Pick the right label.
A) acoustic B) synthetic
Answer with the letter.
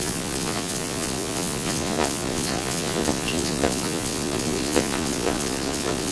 B